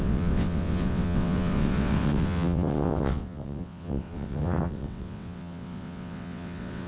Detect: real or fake fake